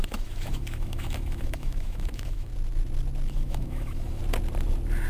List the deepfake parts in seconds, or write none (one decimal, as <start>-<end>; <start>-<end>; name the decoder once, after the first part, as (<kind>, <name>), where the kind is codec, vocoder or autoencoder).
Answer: 0.0-2.5 (autoencoder, DAC-VAE); 3.3-4.2